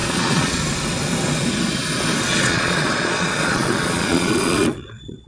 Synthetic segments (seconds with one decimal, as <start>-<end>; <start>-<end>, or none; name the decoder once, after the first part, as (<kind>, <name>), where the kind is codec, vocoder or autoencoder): 0.0-0.6 (vocoder, Vocos); 2.3-5.3